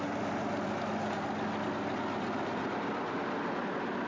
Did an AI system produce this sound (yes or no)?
no